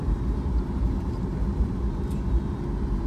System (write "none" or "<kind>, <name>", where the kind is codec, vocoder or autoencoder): vocoder, BigVGAN v2